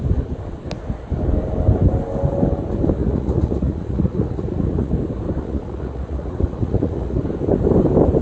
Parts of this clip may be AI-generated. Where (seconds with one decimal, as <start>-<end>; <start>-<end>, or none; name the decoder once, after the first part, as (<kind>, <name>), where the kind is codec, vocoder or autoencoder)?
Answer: 3.0-4.9 (vocoder, Vocos); 5.4-7.2